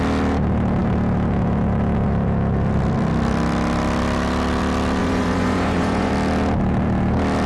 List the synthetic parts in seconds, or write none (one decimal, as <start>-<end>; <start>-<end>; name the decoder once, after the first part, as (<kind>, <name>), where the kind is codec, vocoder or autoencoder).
5.0-6.1 (vocoder, Vocos)